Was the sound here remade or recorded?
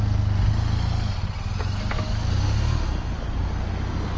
recorded